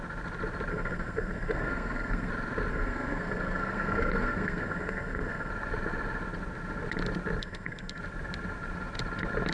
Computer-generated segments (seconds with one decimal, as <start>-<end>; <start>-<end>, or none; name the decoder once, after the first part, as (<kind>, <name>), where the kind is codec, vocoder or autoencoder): 0.7-2.3 (codec, SNAC); 2.7-5.5; 7.4-8.0